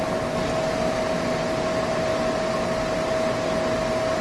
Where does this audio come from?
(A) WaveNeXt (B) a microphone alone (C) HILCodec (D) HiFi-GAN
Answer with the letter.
B